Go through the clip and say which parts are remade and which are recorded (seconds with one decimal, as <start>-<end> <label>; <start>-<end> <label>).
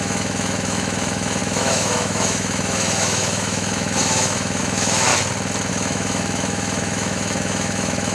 0.0-5.1 remade; 5.1-5.7 recorded; 5.7-8.1 remade